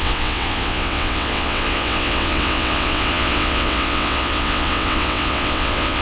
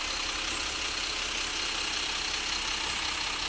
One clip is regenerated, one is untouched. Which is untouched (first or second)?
second